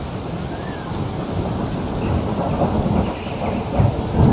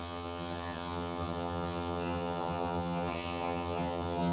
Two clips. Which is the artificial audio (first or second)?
second